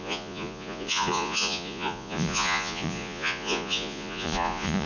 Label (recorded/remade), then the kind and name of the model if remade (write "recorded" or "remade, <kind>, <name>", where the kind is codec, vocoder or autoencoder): remade, vocoder, Vocos